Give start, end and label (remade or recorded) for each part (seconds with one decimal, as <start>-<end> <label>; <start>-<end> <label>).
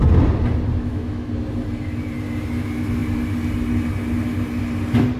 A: 0.0-0.8 recorded; 0.8-1.3 remade; 1.3-5.2 recorded